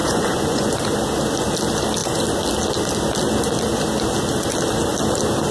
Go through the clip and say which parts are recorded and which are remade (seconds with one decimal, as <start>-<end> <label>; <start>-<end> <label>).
0.0-0.7 remade; 0.7-5.5 recorded